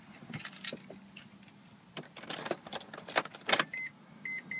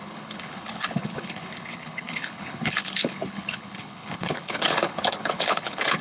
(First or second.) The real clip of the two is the first